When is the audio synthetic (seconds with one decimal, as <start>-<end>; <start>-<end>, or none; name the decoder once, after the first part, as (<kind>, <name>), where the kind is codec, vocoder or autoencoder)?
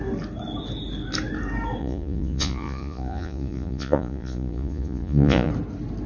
1.8-5.5 (vocoder, Vocos)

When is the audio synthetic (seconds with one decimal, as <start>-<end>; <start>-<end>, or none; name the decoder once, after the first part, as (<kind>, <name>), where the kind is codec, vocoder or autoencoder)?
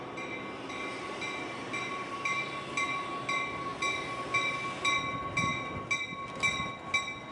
none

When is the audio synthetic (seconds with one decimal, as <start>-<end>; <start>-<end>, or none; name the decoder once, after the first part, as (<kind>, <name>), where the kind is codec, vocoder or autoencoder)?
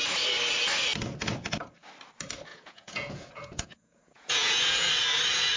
2.5-4.9 (vocoder, Vocos)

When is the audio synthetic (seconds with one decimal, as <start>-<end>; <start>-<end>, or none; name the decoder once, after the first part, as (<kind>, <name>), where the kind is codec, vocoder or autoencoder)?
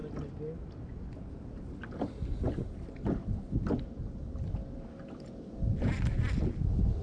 none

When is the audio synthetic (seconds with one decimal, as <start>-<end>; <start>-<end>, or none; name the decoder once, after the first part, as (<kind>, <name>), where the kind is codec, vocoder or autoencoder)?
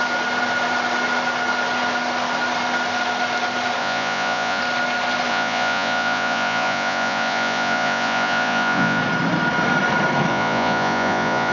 3.8-4.6 (vocoder, Vocos); 5.3-9.0; 10.3-11.5